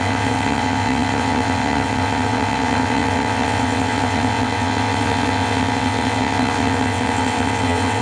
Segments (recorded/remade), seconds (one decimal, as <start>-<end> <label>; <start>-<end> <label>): 0.0-8.0 remade